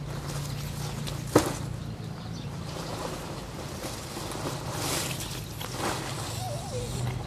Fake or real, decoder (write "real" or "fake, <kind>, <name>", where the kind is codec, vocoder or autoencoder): real